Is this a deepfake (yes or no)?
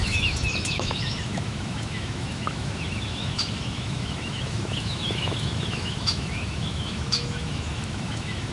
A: yes